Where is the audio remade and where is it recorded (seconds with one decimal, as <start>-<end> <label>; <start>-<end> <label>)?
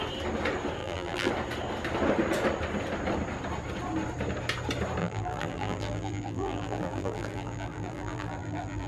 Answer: 0.0-0.8 recorded; 0.8-1.3 remade; 1.3-5.0 recorded; 5.0-8.9 remade